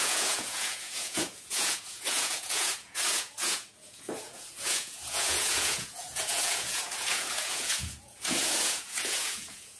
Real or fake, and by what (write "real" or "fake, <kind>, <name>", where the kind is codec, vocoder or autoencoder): fake, vocoder, Vocos